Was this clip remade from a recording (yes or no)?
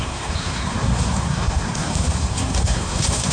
yes